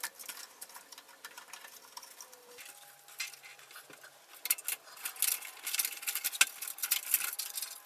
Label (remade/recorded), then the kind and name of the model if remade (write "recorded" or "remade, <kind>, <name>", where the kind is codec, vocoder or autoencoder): recorded